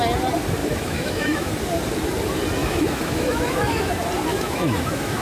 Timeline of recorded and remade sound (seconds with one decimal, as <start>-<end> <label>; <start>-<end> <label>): 0.0-0.6 recorded; 0.6-1.5 remade; 1.5-2.6 recorded; 2.6-3.9 remade; 3.9-4.3 recorded; 4.3-5.2 remade